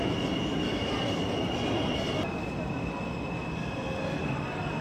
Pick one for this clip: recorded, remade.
recorded